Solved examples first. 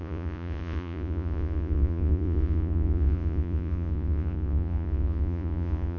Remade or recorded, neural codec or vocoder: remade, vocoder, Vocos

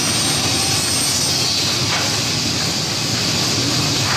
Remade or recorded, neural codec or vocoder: recorded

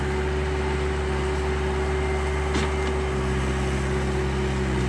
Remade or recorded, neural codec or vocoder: recorded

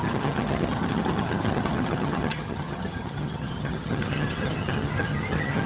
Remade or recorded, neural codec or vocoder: remade, vocoder, HiFi-GAN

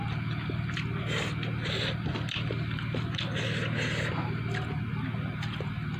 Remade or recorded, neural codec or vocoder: recorded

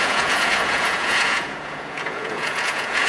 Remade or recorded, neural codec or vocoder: remade, vocoder, Vocos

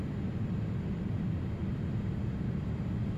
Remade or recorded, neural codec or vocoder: recorded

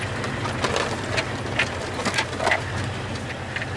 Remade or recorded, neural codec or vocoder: recorded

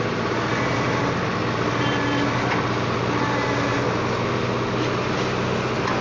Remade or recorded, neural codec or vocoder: recorded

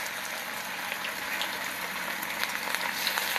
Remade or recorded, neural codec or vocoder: remade, vocoder, BigVGAN v2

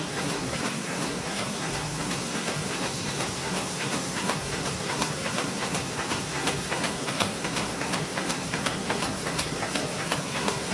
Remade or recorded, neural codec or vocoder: remade, codec, SNAC